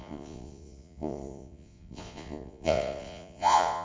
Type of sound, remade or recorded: remade